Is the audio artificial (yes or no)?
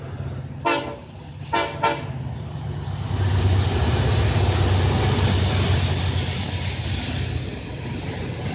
no